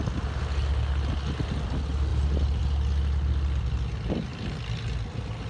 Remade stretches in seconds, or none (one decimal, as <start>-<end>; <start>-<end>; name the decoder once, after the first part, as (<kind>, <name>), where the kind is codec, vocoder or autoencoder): none

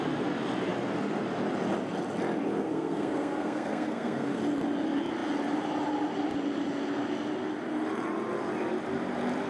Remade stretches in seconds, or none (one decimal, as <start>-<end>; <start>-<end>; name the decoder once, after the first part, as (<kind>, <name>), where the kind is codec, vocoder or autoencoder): 2.6-4.4 (codec, SNAC)

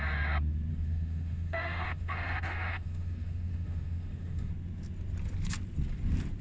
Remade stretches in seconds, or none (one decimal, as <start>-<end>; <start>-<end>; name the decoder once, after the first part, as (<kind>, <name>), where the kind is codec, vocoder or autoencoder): 0.7-4.5 (autoencoder, DAC-VAE)

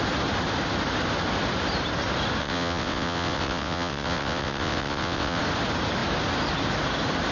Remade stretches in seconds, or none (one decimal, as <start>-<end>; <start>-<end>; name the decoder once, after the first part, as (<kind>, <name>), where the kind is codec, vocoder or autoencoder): 2.4-5.4 (vocoder, WaveNeXt)